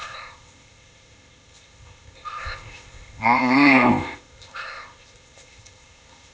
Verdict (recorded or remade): remade